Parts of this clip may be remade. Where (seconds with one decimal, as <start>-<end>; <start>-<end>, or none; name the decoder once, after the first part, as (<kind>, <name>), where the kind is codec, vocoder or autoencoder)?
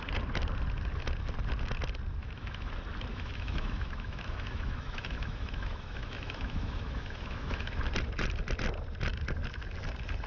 2.2-2.7 (autoencoder, DAC-VAE); 3.1-7.7